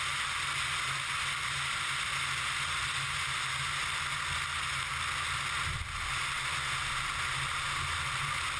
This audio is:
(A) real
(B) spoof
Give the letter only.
A